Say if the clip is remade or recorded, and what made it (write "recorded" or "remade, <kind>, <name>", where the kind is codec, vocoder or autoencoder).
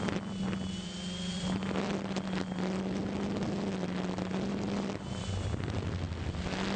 recorded